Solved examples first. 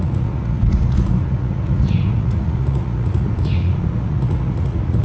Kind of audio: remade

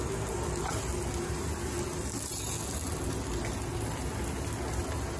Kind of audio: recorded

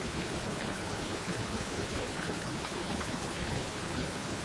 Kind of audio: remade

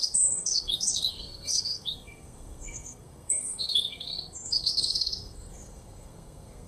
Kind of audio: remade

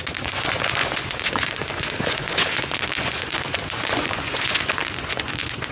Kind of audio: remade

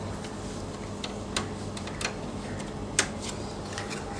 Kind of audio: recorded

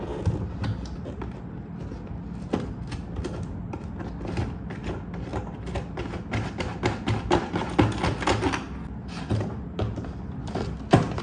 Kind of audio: recorded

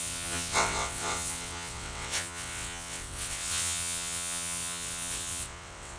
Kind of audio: remade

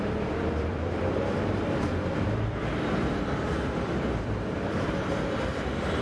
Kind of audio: remade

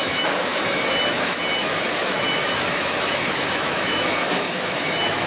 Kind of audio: remade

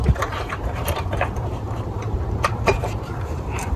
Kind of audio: remade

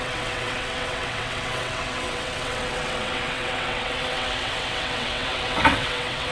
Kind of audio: remade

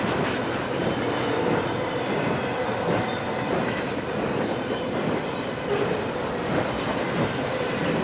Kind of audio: remade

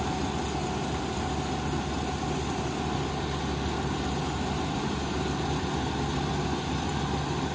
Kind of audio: recorded